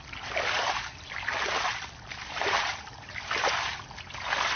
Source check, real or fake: real